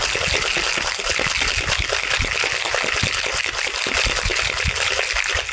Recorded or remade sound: recorded